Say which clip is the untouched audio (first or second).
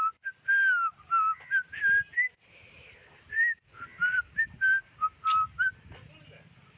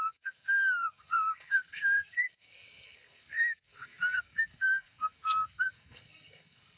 first